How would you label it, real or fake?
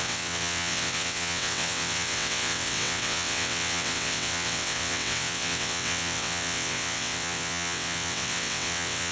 fake